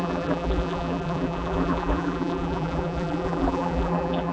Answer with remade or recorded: remade